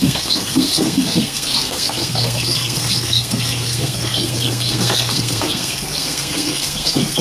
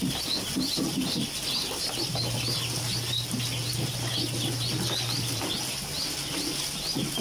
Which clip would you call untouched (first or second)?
second